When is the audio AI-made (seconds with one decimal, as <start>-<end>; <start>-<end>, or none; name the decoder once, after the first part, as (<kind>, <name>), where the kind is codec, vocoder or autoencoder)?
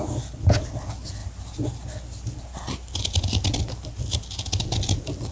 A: none